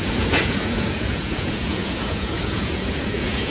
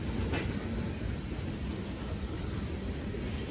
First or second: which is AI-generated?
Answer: first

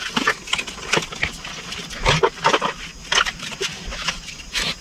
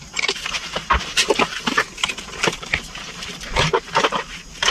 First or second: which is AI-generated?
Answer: second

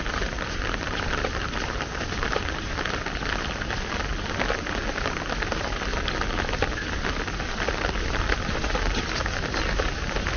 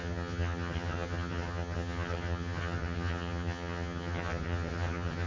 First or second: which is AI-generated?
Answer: second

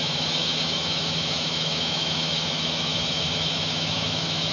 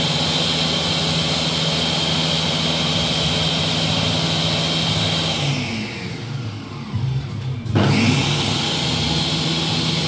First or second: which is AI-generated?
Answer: first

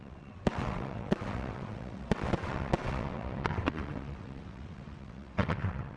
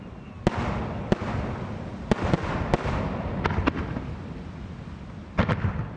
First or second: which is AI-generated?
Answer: first